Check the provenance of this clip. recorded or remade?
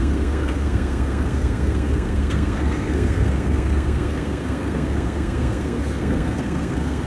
remade